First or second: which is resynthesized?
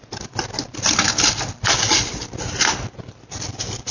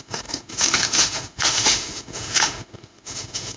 second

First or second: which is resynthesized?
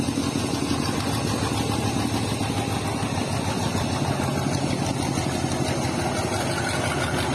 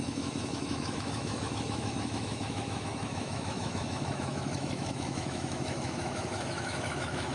second